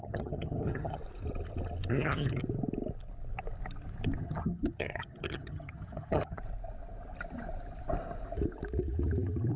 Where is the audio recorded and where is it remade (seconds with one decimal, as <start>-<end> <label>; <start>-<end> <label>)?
0.0-1.0 remade; 1.0-1.9 recorded; 1.9-2.4 remade; 2.4-4.2 recorded; 4.2-6.4 remade; 6.4-9.6 recorded